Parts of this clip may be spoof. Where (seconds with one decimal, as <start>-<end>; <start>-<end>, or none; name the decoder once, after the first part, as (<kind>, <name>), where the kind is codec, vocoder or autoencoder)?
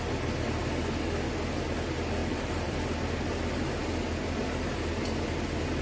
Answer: 2.2-2.8 (vocoder, BigVGAN v2)